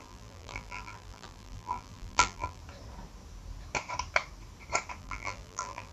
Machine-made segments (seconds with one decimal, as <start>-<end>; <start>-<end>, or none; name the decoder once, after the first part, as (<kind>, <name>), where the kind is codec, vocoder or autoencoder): 0.0-2.6 (vocoder, BigVGAN v2); 5.0-5.9